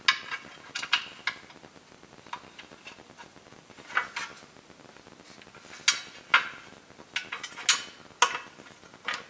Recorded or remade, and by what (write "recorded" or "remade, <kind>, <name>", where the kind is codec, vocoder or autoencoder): recorded